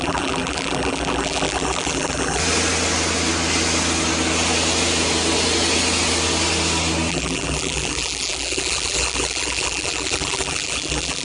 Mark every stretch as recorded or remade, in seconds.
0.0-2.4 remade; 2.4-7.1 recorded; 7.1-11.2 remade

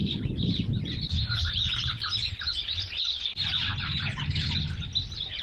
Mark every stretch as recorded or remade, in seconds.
0.0-3.2 remade; 3.2-5.4 recorded

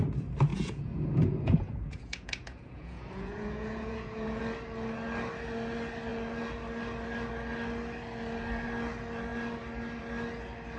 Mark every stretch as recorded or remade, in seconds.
0.0-0.5 recorded; 0.5-4.4 remade; 4.4-10.8 recorded

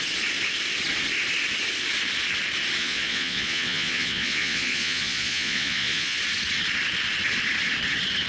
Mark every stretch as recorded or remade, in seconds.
0.0-2.8 recorded; 2.8-6.2 remade; 6.2-8.3 recorded